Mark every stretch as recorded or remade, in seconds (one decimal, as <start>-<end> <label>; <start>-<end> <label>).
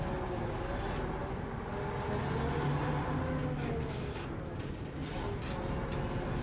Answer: 0.0-6.4 recorded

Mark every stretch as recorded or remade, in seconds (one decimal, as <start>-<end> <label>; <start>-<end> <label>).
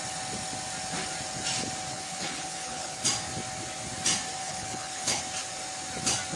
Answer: 0.0-1.9 recorded; 1.9-3.0 remade; 3.0-4.4 recorded; 4.4-5.2 remade; 5.2-6.4 recorded